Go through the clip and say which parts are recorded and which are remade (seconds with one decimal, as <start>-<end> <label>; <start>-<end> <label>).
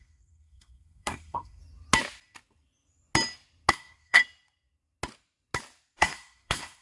0.0-1.6 remade; 1.6-3.7 recorded; 3.7-4.2 remade; 4.2-6.0 recorded; 6.0-6.8 remade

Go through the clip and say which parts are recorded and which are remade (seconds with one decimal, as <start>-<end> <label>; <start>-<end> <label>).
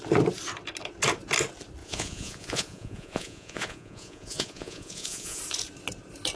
0.0-1.8 recorded; 1.8-5.4 remade; 5.4-6.4 recorded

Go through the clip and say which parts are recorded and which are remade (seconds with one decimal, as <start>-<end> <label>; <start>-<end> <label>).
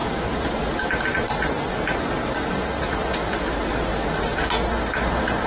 0.0-5.5 recorded